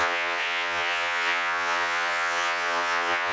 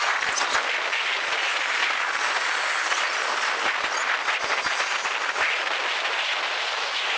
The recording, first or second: second